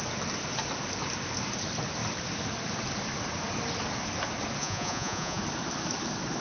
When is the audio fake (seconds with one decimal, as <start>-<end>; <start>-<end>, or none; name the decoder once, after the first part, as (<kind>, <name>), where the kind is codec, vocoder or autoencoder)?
4.6-5.4 (vocoder, Vocos)